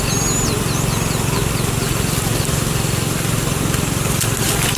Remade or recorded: recorded